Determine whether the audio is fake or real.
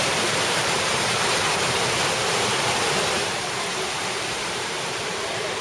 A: fake